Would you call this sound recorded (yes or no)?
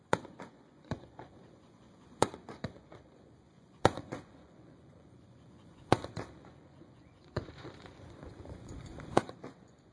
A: no